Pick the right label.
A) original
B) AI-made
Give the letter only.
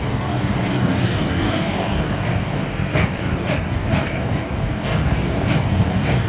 B